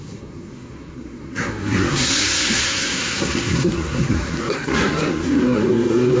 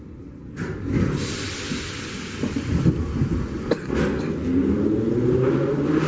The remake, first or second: first